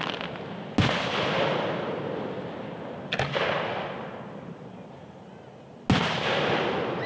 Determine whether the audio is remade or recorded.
recorded